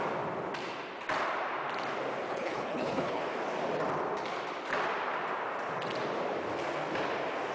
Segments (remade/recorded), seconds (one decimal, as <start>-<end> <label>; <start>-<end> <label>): 0.0-2.3 recorded; 2.3-3.2 remade; 3.2-7.5 recorded